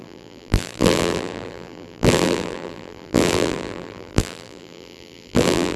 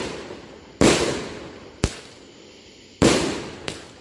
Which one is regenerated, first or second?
first